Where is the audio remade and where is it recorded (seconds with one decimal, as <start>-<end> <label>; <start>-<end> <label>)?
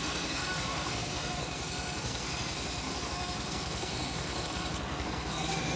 0.0-5.8 remade